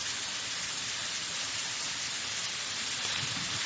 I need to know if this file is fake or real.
real